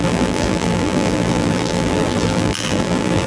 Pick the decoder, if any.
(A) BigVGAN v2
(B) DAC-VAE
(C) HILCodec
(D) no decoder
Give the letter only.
A